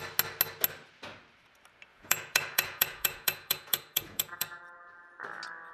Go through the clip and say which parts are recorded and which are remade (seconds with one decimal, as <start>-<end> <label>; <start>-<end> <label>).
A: 0.0-1.9 recorded; 1.9-4.6 remade; 4.6-5.7 recorded